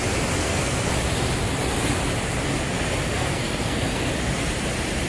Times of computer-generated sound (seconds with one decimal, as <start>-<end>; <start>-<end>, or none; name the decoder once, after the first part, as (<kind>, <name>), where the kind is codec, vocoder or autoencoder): 0.4-0.9 (codec, SNAC); 3.1-4.1